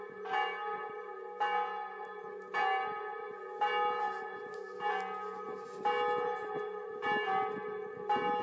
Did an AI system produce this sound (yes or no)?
no